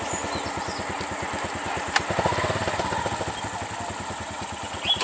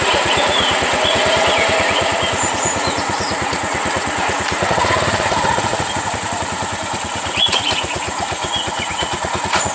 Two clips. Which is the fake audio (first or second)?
second